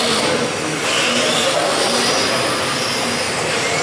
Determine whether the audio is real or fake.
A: real